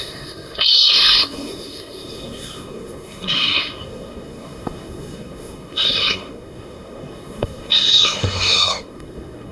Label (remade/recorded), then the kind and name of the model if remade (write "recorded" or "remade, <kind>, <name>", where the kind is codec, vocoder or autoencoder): remade, codec, SNAC